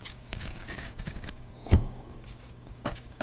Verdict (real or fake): fake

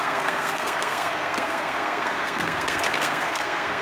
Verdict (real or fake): fake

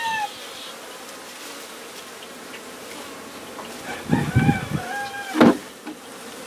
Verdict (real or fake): real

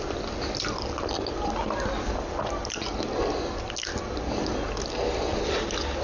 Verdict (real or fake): real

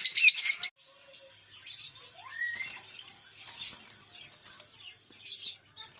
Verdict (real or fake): real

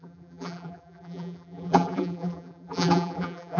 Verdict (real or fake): fake